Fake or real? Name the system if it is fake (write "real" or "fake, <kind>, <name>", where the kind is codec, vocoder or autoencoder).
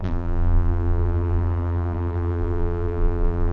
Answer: fake, vocoder, BigVGAN v2